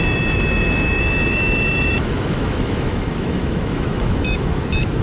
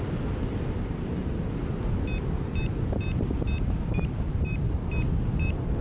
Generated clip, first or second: first